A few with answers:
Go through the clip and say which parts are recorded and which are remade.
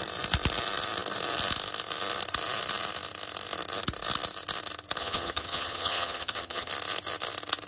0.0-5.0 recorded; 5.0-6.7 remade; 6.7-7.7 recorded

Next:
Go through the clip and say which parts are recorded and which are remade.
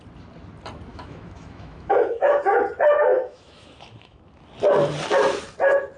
0.0-0.9 recorded; 0.9-2.4 remade; 2.4-3.1 recorded; 3.1-4.2 remade; 4.2-6.0 recorded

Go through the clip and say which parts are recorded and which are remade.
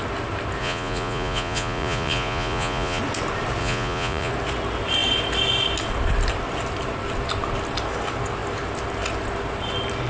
0.0-0.6 recorded; 0.6-3.0 remade; 3.0-3.6 recorded; 3.6-4.3 remade; 4.3-10.1 recorded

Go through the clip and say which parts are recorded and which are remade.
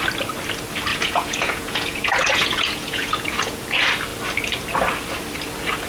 0.0-0.9 recorded; 0.9-3.6 remade; 3.6-5.9 recorded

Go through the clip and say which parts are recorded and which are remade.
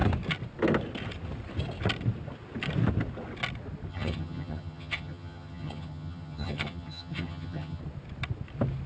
0.0-3.9 recorded; 3.9-7.8 remade; 7.8-8.9 recorded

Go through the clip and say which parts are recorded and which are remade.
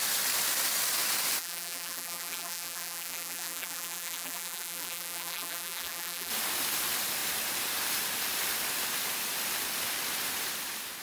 0.0-1.4 recorded; 1.4-6.3 remade; 6.3-11.0 recorded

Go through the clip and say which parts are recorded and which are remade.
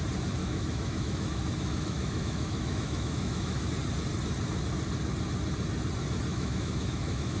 0.0-0.4 recorded; 0.4-3.7 remade; 3.7-6.3 recorded; 6.3-7.4 remade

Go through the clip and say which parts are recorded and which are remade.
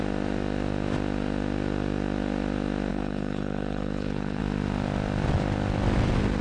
0.0-2.9 recorded; 2.9-4.4 remade; 4.4-6.4 recorded